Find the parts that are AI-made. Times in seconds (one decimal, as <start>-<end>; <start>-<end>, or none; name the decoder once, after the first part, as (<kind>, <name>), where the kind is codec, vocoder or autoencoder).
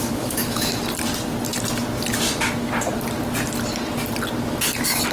0.0-0.8 (autoencoder, DAC-VAE)